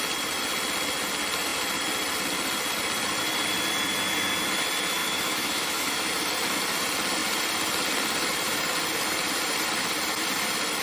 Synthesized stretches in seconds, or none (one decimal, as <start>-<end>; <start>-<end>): 5.0-6.1